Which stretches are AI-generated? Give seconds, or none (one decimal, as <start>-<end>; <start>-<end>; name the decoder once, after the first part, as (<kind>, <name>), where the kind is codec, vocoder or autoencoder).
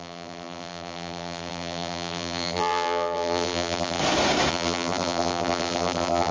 0.0-4.0 (vocoder, BigVGAN v2); 4.5-6.3